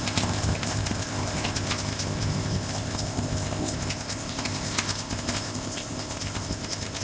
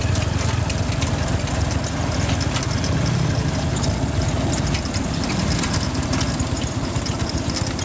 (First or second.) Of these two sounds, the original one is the second